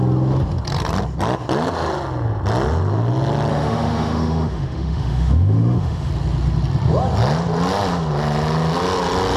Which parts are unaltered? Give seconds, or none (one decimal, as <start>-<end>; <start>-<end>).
0.0-3.5; 6.1-9.4